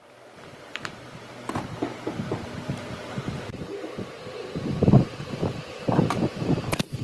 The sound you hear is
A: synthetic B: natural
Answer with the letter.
A